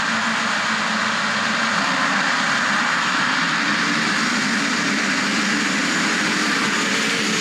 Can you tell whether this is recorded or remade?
remade